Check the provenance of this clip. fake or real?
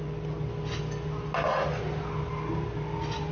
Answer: real